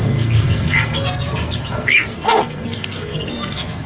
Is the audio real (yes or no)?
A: no